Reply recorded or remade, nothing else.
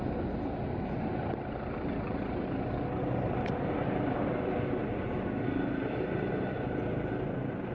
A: recorded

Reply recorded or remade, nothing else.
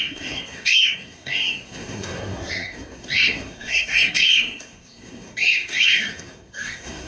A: remade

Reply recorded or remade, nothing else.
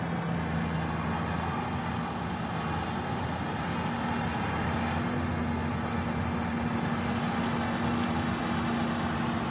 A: recorded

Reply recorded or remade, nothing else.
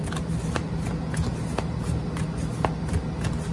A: recorded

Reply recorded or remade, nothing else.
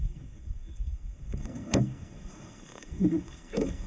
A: remade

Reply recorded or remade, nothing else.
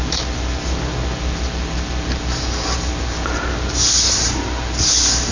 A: recorded